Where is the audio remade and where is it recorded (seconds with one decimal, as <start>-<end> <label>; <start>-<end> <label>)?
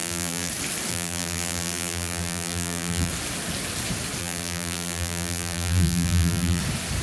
0.0-0.5 remade; 0.5-0.9 recorded; 0.9-3.1 remade; 3.1-4.2 recorded; 4.2-6.6 remade; 6.6-7.0 recorded